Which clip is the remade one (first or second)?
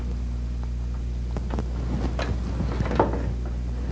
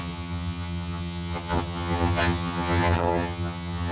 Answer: second